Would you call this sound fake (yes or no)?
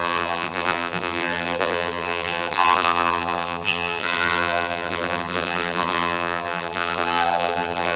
yes